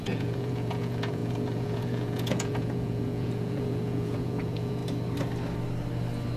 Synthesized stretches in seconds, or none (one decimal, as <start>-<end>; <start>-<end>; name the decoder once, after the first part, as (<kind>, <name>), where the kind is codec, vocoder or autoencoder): 0.0-4.8 (vocoder, Vocos)